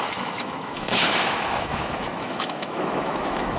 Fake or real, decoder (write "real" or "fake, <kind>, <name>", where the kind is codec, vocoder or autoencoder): fake, autoencoder, DAC-VAE